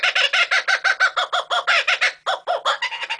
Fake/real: real